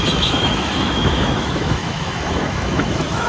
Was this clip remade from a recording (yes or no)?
yes